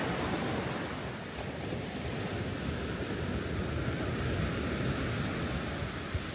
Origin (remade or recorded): recorded